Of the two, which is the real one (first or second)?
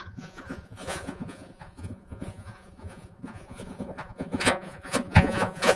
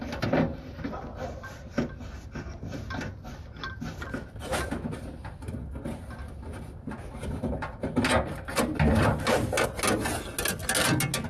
second